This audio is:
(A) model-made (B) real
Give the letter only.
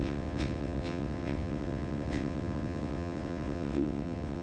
A